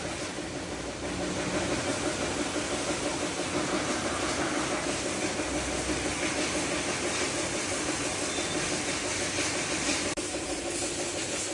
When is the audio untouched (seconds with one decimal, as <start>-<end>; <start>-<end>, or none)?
0.0-9.9; 10.7-11.5